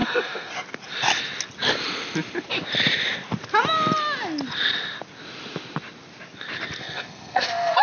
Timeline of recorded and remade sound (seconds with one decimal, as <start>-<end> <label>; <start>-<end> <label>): 0.0-0.5 remade; 0.5-6.8 recorded; 6.8-7.8 remade